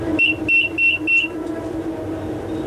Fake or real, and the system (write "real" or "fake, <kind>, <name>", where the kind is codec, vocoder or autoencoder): real